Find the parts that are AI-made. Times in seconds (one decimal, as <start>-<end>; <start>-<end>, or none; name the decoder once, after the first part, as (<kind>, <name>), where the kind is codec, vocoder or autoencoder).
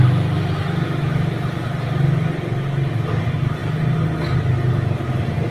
none